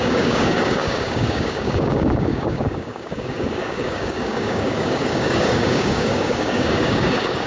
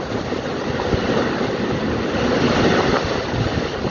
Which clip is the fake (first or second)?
first